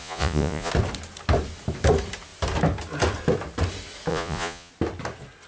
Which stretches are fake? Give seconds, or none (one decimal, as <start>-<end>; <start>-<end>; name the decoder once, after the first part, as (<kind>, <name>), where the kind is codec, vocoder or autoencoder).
0.0-0.7 (vocoder, Vocos); 4.1-4.7